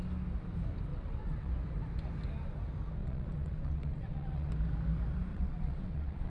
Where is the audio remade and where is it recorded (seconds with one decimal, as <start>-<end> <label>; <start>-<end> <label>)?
0.0-0.9 recorded; 0.9-1.5 remade; 1.5-3.0 recorded; 3.0-4.5 remade; 4.5-5.3 recorded; 5.3-6.3 remade